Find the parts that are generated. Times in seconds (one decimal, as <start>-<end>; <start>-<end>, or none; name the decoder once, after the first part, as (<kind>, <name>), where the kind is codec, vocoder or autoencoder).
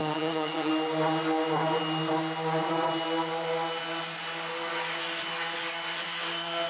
0.0-0.7 (vocoder, HiFi-GAN)